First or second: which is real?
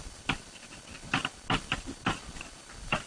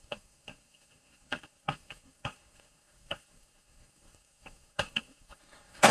first